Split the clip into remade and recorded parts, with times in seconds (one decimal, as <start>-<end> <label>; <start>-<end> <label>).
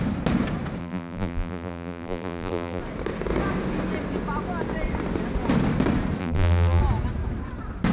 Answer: 0.0-0.8 recorded; 0.8-2.8 remade; 2.8-6.2 recorded; 6.2-6.8 remade; 6.8-7.9 recorded